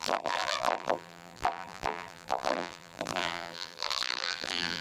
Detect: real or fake fake